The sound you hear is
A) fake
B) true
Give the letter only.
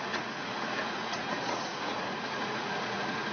A